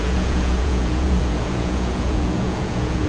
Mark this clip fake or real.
fake